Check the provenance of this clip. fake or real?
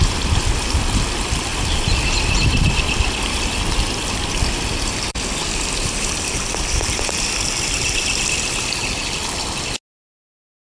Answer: real